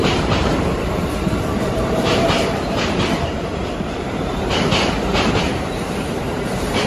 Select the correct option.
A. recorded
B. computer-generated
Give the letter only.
B